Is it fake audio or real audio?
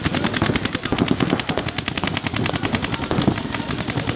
real